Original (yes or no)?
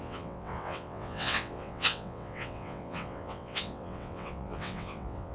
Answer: no